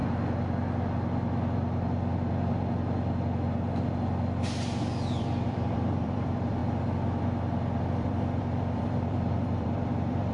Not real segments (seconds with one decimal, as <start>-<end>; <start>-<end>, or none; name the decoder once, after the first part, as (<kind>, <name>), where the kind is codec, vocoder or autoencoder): 5.2-6.6 (vocoder, BigVGAN v2); 7.8-10.3